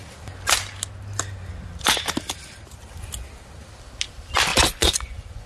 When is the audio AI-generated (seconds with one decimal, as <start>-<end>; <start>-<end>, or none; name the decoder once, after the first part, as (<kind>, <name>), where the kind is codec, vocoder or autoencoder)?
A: 4.5-5.5 (vocoder, Vocos)